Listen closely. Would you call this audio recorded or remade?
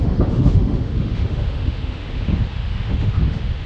remade